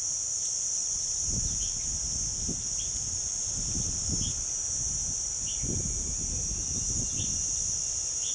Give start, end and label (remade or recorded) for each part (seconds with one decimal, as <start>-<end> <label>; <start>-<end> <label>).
0.0-0.8 recorded; 0.8-1.9 remade; 1.9-2.3 recorded; 2.3-3.9 remade; 3.9-5.0 recorded; 5.0-6.4 remade; 6.4-8.3 recorded